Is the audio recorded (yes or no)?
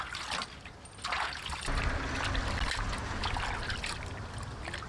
yes